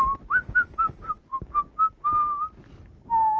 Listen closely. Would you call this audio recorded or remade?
recorded